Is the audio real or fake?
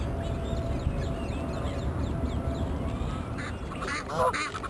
real